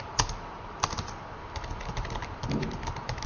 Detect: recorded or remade recorded